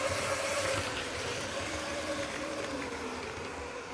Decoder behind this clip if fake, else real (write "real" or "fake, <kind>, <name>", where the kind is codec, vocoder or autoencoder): fake, vocoder, BigVGAN v2